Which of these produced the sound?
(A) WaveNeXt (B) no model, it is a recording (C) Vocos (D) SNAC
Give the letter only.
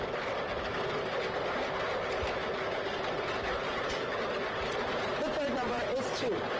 B